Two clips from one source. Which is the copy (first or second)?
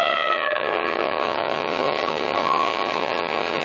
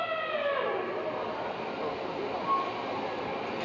first